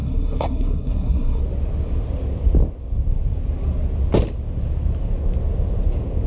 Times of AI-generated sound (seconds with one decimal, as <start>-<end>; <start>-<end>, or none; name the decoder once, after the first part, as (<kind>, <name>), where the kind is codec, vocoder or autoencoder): 0.0-1.4 (codec, SNAC)